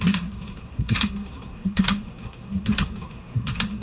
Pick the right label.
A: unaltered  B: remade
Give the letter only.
B